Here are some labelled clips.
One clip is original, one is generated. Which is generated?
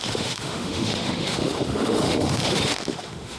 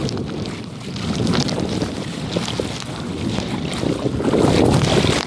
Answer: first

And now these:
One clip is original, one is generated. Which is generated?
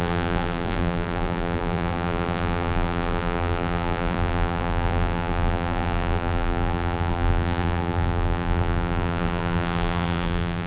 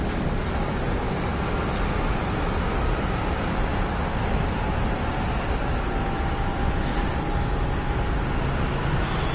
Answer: first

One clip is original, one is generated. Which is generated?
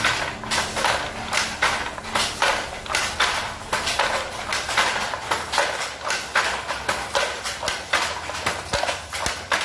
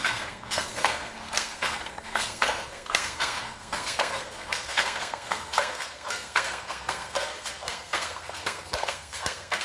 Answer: second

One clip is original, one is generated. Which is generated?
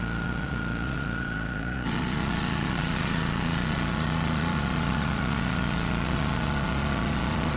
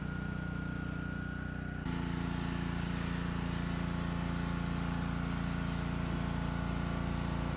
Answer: first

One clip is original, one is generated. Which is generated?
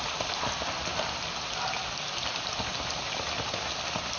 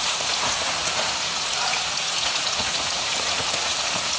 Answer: second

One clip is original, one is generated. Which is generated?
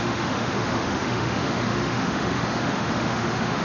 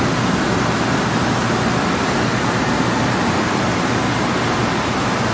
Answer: first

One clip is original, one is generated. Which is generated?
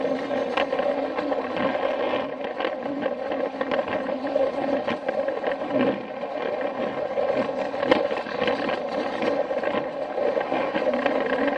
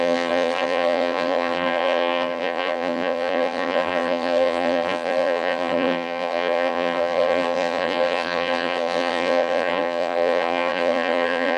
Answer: second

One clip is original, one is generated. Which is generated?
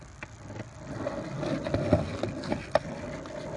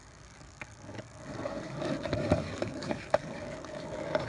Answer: second